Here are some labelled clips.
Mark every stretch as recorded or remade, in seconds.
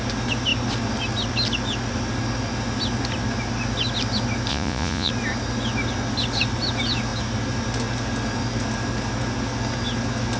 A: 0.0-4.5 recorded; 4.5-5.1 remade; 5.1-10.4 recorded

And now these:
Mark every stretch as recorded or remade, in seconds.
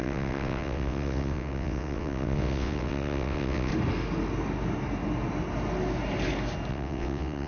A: 0.0-3.7 remade; 3.7-6.7 recorded; 6.7-7.5 remade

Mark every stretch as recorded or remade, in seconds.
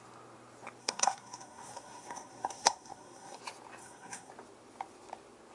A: 0.0-0.8 recorded; 0.8-3.4 remade; 3.4-3.8 recorded; 3.8-4.3 remade; 4.3-5.5 recorded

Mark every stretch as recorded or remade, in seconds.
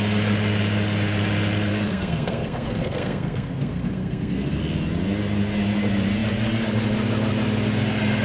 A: 0.0-1.7 recorded; 1.7-4.6 remade; 4.6-8.2 recorded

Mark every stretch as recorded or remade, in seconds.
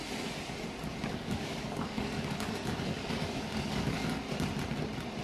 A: 0.0-1.1 recorded; 1.1-4.2 remade; 4.2-5.2 recorded